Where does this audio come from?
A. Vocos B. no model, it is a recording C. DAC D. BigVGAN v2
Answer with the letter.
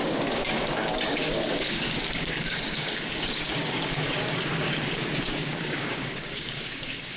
C